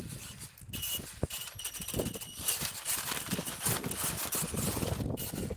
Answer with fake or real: real